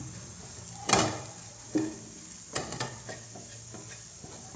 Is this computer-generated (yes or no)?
no